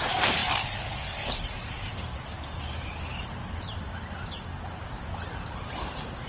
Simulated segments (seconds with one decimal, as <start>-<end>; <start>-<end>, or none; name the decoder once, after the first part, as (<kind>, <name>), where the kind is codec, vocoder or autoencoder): 0.0-0.4 (vocoder, BigVGAN v2); 1.3-6.3